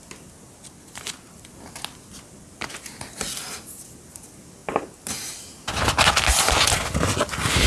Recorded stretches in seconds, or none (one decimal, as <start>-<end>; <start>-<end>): 0.0-7.7